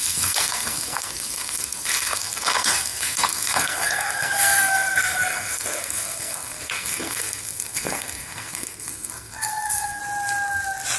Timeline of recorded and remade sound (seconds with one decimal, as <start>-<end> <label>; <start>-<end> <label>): 0.0-10.0 remade; 10.0-11.0 recorded